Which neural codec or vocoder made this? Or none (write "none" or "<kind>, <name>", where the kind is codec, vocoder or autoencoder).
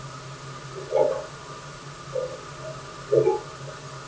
none